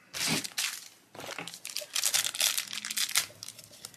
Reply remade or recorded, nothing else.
recorded